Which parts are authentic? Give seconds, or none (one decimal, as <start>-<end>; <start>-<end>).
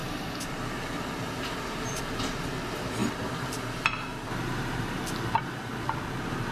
2.0-4.1; 5.0-6.5